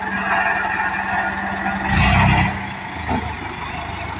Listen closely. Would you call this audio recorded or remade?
recorded